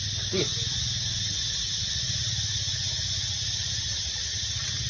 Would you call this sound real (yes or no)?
yes